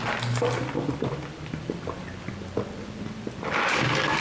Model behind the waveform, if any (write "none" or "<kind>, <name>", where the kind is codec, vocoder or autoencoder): vocoder, BigVGAN v2